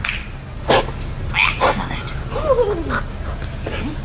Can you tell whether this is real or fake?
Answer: real